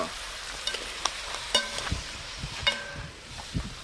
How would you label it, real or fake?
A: fake